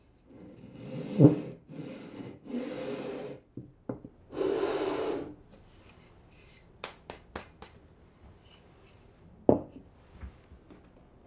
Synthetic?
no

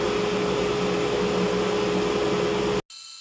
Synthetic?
no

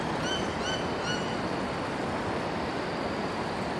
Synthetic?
no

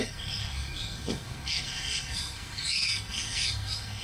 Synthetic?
yes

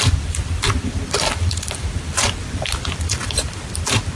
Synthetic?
yes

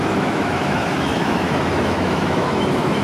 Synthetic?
yes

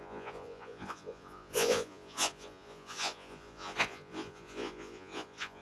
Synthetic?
yes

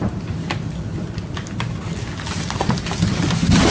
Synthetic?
no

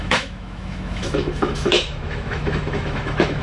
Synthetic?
yes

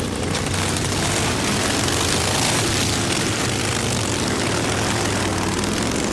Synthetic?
no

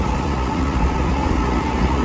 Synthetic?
yes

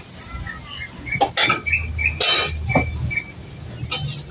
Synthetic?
no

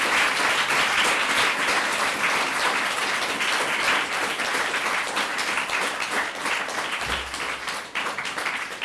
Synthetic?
no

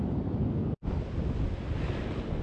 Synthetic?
no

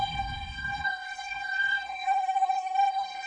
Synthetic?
yes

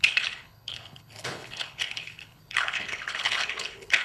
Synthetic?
yes